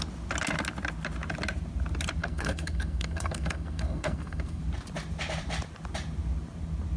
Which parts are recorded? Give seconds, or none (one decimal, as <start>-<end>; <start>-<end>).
0.0-2.2; 4.6-7.0